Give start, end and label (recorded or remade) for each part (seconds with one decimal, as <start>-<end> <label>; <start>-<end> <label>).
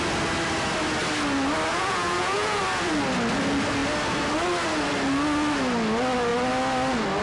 0.0-1.7 recorded; 1.7-2.6 remade; 2.6-7.2 recorded